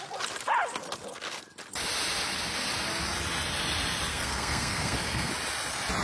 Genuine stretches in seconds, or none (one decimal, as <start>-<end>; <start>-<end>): 0.0-4.1; 5.3-6.0